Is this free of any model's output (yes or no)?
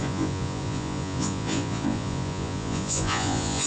no